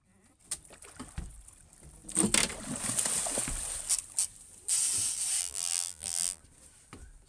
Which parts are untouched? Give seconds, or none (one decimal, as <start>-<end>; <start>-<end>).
0.0-5.4; 6.4-7.3